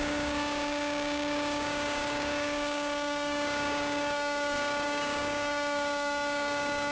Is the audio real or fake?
fake